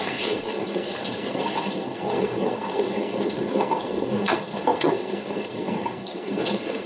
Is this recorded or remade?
remade